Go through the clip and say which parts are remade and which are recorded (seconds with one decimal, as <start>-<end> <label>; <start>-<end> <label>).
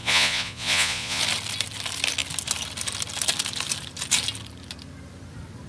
0.0-1.2 remade; 1.2-5.7 recorded